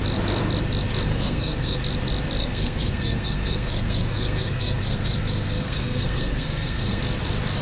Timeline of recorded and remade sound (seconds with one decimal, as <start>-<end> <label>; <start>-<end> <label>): 0.0-1.1 recorded; 1.1-1.8 remade; 1.8-2.4 recorded; 2.4-7.0 remade; 7.0-7.6 recorded